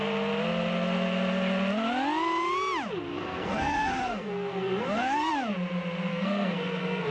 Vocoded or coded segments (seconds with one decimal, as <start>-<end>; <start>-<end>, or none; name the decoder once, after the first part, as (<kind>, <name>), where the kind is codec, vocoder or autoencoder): 3.1-5.3 (codec, SNAC); 6.1-7.1